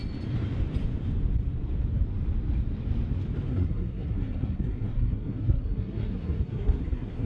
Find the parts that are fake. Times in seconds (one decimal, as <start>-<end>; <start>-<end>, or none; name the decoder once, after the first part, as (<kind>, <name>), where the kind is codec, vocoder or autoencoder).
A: 3.5-7.3 (codec, SNAC)